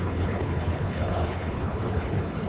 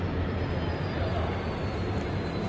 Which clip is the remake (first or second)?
first